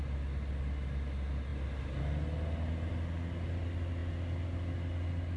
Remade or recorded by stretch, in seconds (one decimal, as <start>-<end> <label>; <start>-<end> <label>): 0.0-5.4 recorded